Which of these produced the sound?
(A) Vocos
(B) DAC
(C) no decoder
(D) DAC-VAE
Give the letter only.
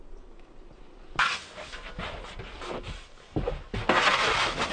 C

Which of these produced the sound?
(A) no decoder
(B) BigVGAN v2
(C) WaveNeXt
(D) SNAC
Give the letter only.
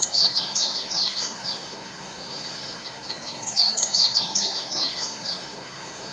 D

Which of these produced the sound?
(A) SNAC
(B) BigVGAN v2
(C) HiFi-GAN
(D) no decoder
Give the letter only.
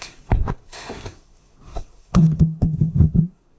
A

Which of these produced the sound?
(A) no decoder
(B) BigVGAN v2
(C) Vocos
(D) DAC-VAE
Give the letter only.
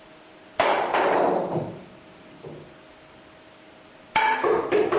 A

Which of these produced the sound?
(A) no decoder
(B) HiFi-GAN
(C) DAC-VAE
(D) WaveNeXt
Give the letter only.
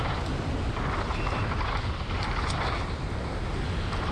A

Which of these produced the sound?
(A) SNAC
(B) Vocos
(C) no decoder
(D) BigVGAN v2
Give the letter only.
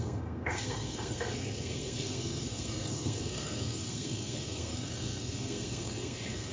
A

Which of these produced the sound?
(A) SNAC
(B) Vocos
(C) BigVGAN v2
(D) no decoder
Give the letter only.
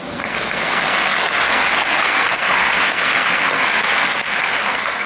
A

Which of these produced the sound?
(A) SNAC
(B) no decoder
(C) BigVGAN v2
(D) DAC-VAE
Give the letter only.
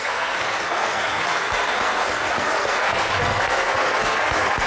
A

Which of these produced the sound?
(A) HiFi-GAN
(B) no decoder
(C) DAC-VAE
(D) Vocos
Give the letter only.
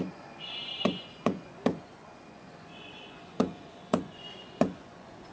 D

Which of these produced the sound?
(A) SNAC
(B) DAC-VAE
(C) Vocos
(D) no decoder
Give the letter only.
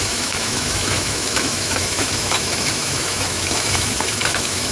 B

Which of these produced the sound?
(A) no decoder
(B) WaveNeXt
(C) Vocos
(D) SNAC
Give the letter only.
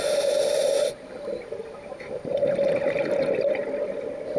A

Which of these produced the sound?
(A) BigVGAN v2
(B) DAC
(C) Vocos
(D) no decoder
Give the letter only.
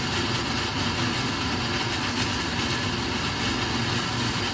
D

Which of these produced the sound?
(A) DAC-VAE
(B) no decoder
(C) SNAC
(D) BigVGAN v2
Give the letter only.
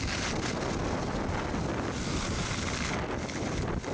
B